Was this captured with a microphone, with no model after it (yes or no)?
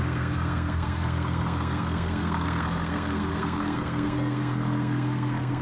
no